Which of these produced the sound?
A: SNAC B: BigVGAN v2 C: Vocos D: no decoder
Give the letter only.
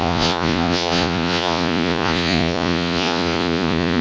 C